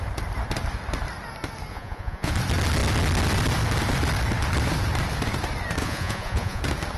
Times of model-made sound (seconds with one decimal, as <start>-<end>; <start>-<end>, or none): 1.7-2.3; 5.8-6.6

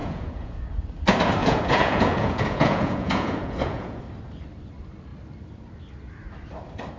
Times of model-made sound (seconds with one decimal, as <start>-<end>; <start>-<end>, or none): 0.0-0.6; 1.4-4.0

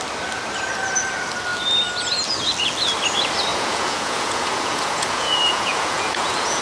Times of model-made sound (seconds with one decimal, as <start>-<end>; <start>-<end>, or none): 3.5-6.6

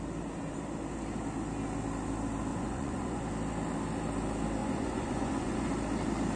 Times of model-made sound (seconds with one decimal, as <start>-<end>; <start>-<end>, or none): 2.5-3.2; 4.6-5.7

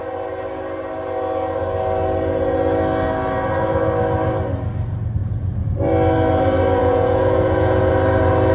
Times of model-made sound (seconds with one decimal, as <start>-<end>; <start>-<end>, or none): 5.2-5.7; 6.8-7.9

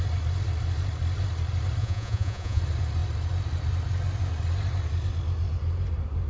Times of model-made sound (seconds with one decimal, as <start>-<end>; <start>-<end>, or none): 1.8-2.6

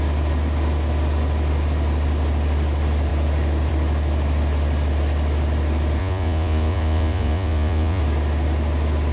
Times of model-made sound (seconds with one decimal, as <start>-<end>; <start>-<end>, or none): 6.0-8.0

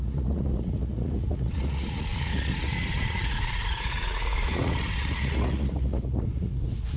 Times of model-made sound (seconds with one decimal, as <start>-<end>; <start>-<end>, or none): 0.0-7.0